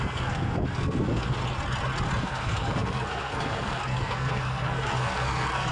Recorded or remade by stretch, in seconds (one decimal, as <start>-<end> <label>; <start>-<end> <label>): 0.0-1.4 remade; 1.4-2.2 recorded; 2.2-5.7 remade